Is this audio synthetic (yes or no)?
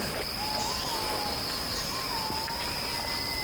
no